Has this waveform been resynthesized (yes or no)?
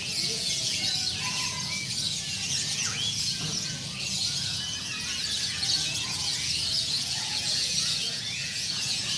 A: yes